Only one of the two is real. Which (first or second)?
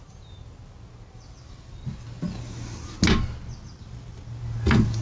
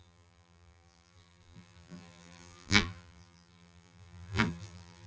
first